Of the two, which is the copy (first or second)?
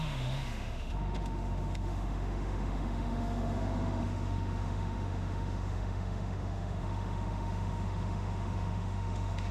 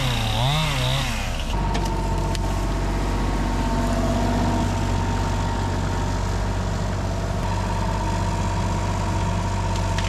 first